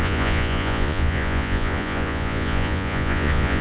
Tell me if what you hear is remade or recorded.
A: remade